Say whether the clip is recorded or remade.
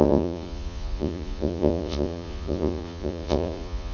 remade